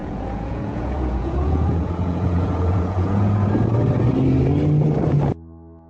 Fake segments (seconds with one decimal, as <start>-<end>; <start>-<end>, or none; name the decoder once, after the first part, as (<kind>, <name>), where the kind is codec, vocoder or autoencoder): 0.0-3.5 (vocoder, Vocos)